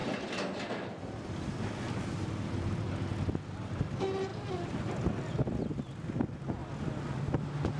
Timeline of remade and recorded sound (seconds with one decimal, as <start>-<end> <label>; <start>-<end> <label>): 0.0-1.7 remade; 1.7-6.6 recorded; 6.6-7.2 remade; 7.2-7.8 recorded